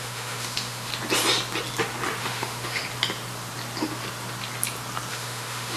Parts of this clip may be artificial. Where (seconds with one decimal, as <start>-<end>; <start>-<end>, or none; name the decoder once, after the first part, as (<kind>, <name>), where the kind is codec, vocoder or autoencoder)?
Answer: 0.0-0.9 (autoencoder, DAC-VAE); 2.2-2.8; 5.1-5.8